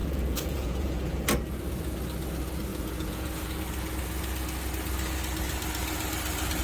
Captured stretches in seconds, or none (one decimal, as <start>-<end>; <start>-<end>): 1.1-2.7; 3.6-6.6